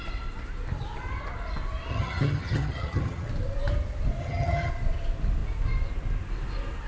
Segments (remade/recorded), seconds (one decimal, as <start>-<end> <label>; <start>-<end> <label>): 0.0-1.9 recorded; 1.9-3.3 remade; 3.3-4.2 recorded; 4.2-4.7 remade; 4.7-6.9 recorded